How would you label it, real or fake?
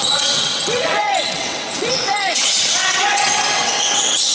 fake